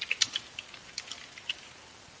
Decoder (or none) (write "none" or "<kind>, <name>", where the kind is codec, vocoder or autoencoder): none